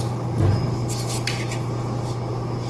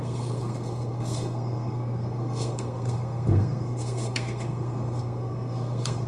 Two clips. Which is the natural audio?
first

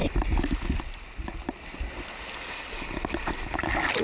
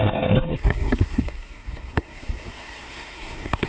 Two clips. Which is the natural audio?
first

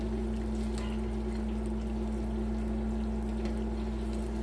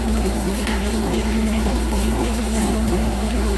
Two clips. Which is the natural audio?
first